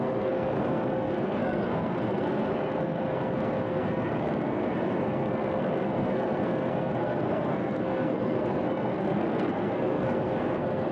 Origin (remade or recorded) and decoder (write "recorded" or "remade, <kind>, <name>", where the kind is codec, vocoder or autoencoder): remade, codec, SNAC